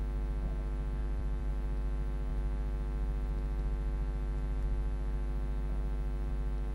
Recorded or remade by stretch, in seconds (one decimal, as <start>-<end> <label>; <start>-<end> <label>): 0.0-1.0 recorded; 1.0-1.5 remade; 1.5-6.7 recorded